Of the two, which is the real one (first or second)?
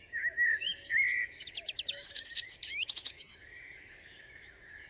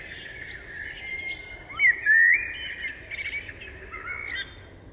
second